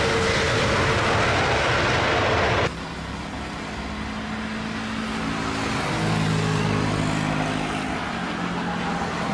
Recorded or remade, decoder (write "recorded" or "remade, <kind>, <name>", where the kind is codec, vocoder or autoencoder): recorded